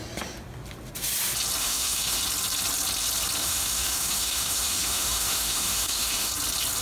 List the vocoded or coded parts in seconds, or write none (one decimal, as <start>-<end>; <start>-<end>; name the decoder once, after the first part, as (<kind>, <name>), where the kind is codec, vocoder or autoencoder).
1.6-2.2 (autoencoder, DAC-VAE); 3.4-6.3